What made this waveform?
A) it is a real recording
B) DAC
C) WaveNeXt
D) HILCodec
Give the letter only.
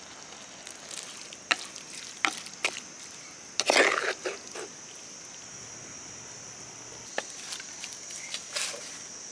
A